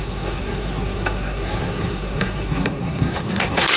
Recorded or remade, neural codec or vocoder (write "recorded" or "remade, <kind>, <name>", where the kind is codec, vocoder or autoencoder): remade, codec, SNAC